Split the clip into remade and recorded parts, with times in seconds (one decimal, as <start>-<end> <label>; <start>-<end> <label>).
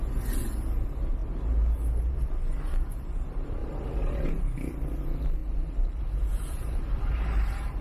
0.0-3.6 recorded; 3.6-4.4 remade; 4.4-5.4 recorded; 5.4-7.8 remade